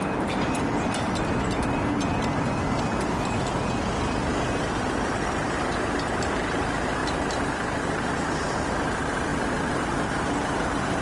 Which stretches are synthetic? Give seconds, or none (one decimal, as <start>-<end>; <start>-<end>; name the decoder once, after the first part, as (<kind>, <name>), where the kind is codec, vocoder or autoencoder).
none